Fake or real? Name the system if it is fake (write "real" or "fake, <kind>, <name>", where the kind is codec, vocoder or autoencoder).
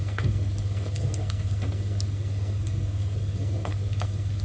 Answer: fake, codec, SNAC